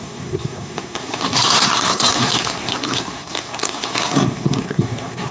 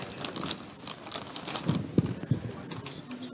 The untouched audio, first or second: second